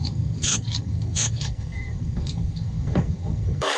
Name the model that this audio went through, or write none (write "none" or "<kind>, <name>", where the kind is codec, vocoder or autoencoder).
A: codec, SNAC